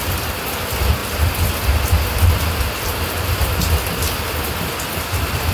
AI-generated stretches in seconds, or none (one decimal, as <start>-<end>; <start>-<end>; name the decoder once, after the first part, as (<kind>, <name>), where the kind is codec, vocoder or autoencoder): none